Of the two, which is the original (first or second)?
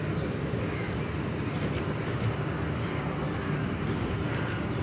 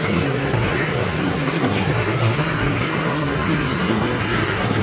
first